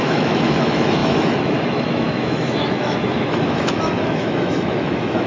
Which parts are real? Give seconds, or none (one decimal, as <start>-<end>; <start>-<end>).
none

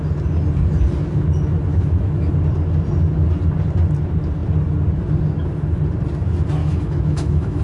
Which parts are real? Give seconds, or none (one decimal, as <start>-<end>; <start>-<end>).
0.0-1.7; 2.3-6.6

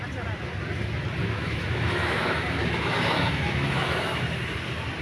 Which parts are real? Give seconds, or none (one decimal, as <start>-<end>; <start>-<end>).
0.0-1.2; 4.2-5.0

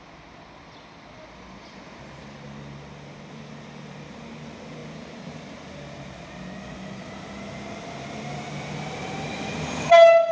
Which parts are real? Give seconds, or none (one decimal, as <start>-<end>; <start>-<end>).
0.0-10.3

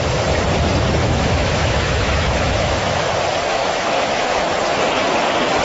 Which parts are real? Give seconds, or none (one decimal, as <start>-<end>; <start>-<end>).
0.0-1.0; 3.1-3.5; 4.5-5.6

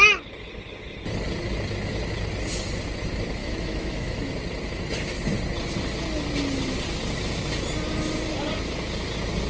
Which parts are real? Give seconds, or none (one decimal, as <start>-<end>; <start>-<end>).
0.0-3.4; 4.3-9.5

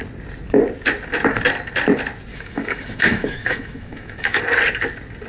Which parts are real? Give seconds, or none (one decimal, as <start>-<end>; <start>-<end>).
0.0-2.3; 4.4-5.3

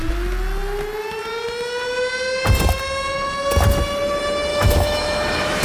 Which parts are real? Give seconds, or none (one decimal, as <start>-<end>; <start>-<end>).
0.0-4.5